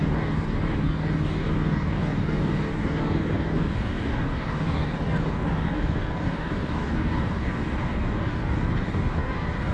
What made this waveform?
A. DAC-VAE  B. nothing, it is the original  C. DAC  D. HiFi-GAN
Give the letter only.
C